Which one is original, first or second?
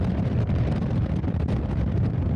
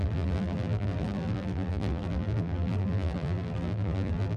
first